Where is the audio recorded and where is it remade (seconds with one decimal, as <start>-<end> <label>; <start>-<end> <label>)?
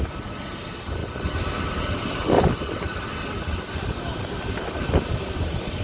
0.0-5.8 recorded